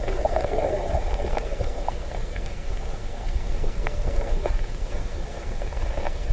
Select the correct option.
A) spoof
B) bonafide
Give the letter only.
A